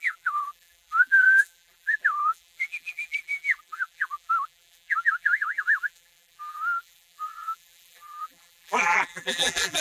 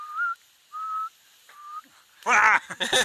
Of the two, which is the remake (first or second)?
first